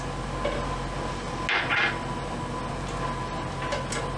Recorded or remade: recorded